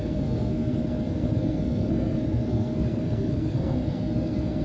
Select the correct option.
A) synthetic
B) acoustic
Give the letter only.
A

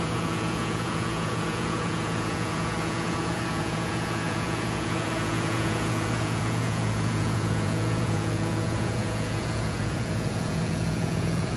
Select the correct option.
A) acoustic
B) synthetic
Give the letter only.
B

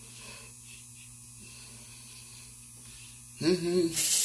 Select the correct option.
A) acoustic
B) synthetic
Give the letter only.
A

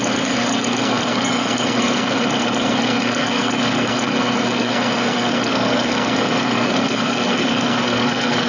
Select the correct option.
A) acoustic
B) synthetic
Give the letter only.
B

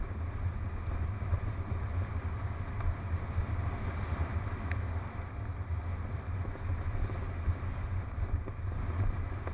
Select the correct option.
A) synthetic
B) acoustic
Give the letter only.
B